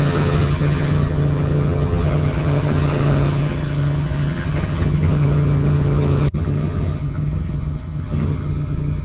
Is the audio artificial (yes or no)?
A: yes